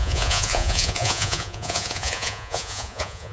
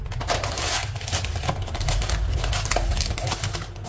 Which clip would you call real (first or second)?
second